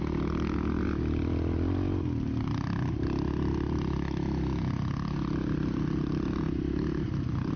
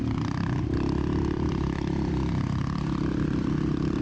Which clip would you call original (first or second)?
first